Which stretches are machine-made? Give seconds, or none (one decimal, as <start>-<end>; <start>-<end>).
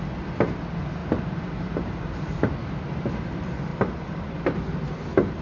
1.0-2.4